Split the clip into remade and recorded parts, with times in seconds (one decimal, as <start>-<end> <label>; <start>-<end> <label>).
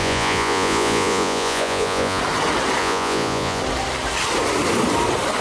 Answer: 0.0-2.2 remade; 2.2-2.8 recorded; 2.8-3.6 remade; 3.6-5.4 recorded